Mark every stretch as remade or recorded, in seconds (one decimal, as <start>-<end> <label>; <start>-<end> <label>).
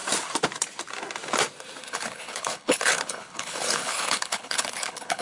0.0-1.8 recorded; 1.8-5.2 remade